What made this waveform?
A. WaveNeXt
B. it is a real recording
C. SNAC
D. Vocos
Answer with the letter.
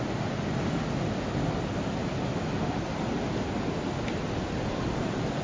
B